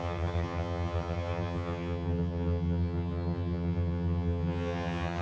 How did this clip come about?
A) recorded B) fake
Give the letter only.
B